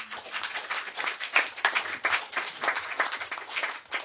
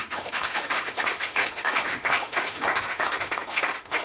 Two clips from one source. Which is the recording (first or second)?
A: first